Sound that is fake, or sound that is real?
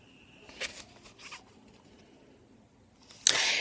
real